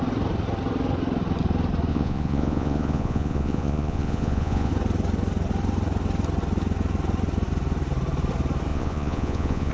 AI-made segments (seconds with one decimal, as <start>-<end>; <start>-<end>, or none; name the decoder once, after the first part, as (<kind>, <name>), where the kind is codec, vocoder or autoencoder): 1.9-4.7 (vocoder, Vocos); 8.7-9.7